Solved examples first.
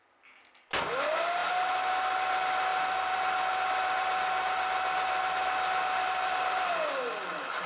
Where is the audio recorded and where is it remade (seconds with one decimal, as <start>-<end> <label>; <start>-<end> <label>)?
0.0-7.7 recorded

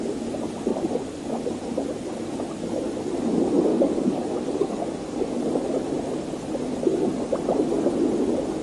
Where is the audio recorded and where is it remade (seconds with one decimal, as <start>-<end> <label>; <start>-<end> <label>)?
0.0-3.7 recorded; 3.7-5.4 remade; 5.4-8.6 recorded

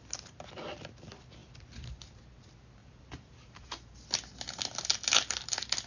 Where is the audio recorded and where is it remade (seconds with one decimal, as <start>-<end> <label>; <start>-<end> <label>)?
0.0-2.8 recorded; 2.8-3.9 remade; 3.9-5.9 recorded

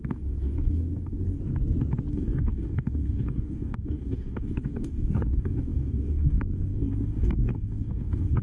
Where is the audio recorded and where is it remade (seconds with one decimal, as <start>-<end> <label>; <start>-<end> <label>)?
0.0-1.4 remade; 1.4-2.1 recorded; 2.1-8.4 remade

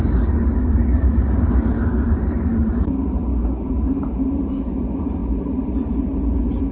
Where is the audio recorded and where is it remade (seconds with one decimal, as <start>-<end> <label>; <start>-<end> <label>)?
0.0-6.7 remade

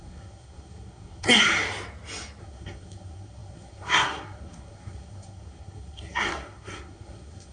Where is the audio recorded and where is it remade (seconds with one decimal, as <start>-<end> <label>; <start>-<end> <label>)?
0.0-1.5 remade; 1.5-2.4 recorded; 2.4-7.5 remade

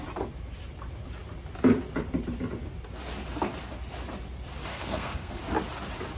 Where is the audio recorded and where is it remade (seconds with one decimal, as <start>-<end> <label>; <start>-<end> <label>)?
0.0-4.7 recorded; 4.7-5.4 remade; 5.4-6.2 recorded